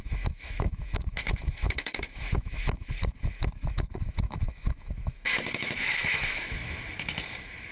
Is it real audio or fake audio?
fake